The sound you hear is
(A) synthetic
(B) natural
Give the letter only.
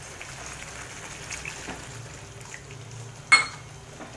B